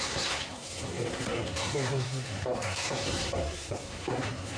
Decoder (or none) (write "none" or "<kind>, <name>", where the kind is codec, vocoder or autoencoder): codec, SNAC